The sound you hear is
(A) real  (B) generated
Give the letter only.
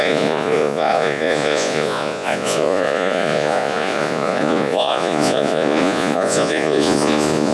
B